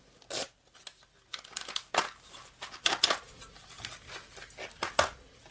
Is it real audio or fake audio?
real